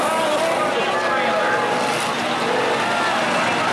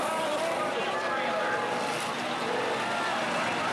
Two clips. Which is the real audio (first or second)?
first